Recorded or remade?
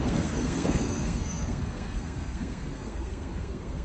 remade